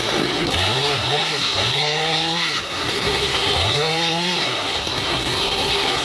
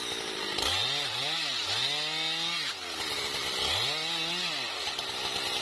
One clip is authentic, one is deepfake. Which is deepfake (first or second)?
first